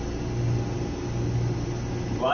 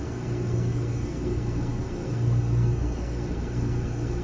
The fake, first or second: second